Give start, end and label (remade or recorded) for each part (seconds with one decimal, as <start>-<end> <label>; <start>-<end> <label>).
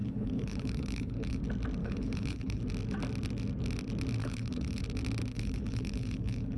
0.0-1.4 remade; 1.4-1.8 recorded; 1.8-2.6 remade; 2.6-4.2 recorded; 4.2-4.8 remade; 4.8-5.3 recorded; 5.3-6.6 remade